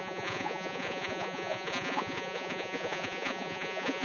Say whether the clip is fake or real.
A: fake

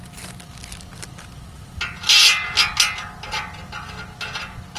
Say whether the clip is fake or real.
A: real